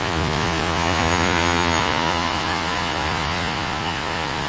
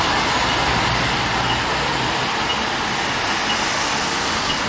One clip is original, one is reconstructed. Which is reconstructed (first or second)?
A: first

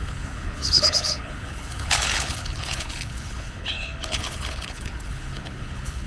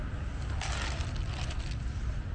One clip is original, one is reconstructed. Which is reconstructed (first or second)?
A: first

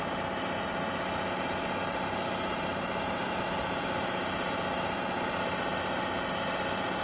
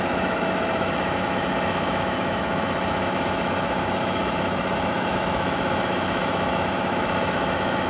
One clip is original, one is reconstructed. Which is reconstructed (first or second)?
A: second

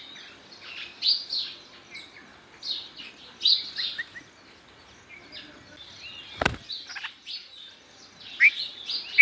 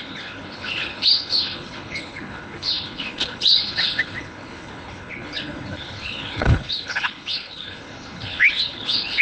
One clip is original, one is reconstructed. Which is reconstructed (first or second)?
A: second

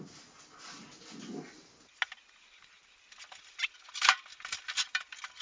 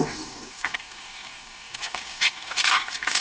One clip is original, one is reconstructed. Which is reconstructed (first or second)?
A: second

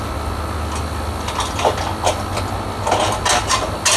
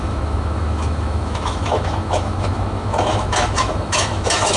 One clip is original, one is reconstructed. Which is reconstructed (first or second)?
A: second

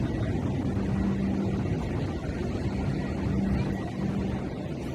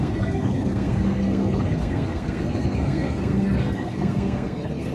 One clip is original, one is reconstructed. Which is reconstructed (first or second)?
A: second